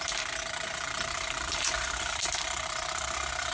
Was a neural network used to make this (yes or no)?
yes